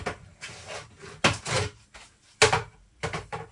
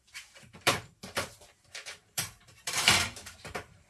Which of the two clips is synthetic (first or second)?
second